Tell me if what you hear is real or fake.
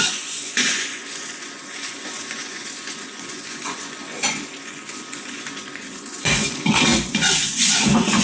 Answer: fake